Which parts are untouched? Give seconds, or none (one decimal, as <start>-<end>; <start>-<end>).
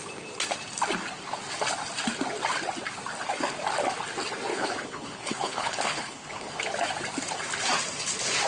0.0-4.5; 6.6-8.5